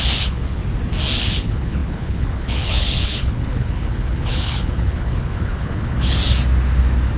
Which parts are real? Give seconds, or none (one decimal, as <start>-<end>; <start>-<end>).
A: 0.6-1.2; 6.2-7.2

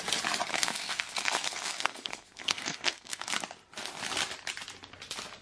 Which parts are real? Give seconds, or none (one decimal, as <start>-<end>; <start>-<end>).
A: 0.0-0.5; 3.3-5.4

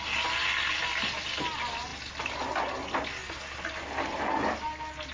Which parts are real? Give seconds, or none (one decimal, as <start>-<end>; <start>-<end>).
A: 0.0-5.1

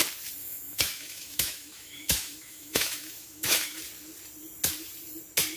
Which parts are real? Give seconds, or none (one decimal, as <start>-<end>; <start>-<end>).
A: 0.0-0.4; 3.8-5.6

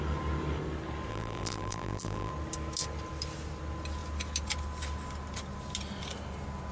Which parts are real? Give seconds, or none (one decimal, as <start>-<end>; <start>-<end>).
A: 0.0-1.1; 2.3-6.7

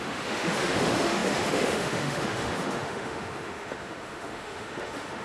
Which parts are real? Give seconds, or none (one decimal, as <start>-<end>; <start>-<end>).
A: none

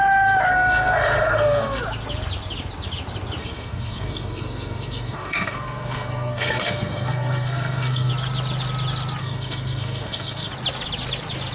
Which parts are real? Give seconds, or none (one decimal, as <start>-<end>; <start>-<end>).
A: 0.0-0.5; 1.8-3.4; 8.1-9.2; 10.5-11.5

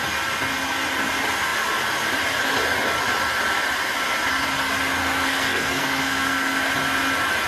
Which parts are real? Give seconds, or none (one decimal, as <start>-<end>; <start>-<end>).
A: 0.0-5.0; 6.7-7.5